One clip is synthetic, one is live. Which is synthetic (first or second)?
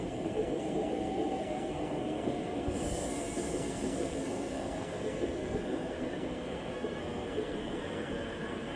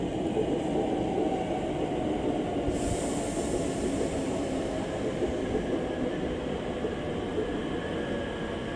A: first